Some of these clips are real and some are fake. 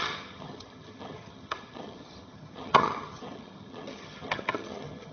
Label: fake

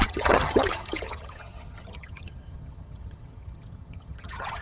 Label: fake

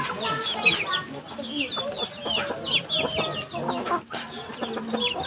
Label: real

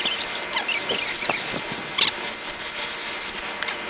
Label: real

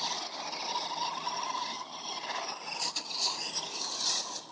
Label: real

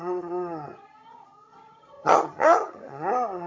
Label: fake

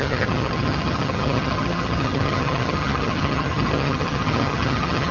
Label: fake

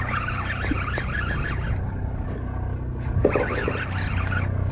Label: real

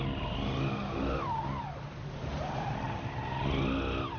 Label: real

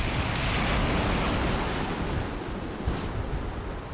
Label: real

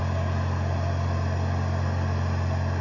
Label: real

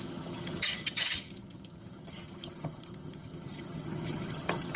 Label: fake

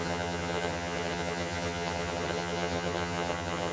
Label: fake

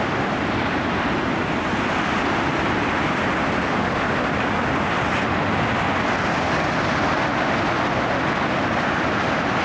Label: real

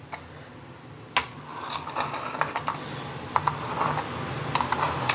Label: real